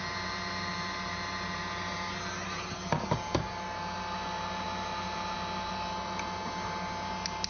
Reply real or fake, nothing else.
real